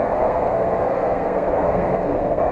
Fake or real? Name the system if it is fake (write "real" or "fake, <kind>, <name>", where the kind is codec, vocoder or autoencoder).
fake, codec, SNAC